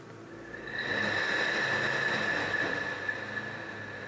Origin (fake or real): real